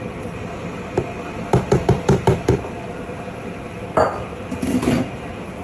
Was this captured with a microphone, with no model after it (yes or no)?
no